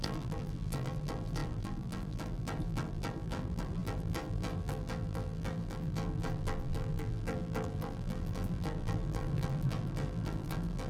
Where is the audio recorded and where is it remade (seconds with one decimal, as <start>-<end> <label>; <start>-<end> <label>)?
0.0-10.9 remade